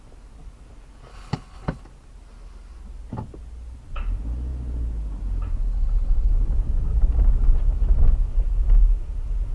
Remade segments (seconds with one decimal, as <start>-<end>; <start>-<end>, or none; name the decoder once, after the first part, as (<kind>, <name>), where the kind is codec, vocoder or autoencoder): 1.1-1.8 (codec, HILCodec); 5.7-6.3

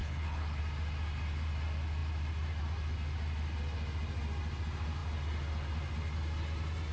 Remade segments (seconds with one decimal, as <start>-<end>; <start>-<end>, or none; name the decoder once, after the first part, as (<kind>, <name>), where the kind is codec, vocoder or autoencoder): 0.0-0.6 (codec, HILCodec)

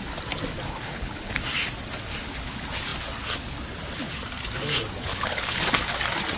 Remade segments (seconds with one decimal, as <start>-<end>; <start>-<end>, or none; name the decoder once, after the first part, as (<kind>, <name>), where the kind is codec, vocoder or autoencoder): 0.7-1.3 (codec, HILCodec); 5.1-5.6

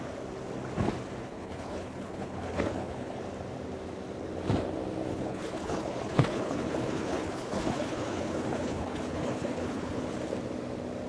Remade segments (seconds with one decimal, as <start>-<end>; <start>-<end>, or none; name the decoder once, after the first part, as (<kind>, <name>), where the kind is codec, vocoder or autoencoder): 1.2-3.2 (codec, HILCodec); 5.1-10.0

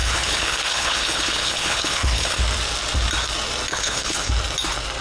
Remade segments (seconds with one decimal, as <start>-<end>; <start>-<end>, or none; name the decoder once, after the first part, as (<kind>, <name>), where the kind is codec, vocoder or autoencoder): 0.0-2.4 (codec, HILCodec); 3.7-4.3

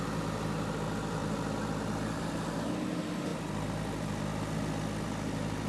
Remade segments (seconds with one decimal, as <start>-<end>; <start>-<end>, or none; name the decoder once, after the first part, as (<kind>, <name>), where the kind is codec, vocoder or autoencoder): none